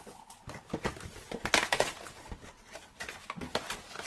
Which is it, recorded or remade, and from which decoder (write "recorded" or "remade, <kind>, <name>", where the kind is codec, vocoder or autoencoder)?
recorded